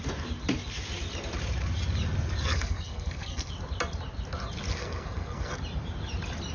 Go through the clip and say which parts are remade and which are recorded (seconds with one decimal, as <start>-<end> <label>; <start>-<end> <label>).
0.0-2.4 recorded; 2.4-3.5 remade; 3.5-4.7 recorded; 4.7-5.5 remade; 5.5-6.5 recorded

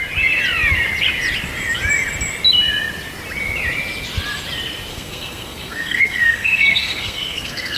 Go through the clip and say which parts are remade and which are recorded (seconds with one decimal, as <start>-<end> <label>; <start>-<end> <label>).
0.0-4.9 recorded; 4.9-7.8 remade

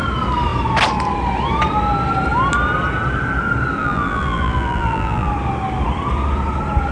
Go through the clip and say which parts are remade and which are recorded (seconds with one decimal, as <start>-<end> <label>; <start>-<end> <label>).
0.0-3.8 recorded; 3.8-5.3 remade; 5.3-6.9 recorded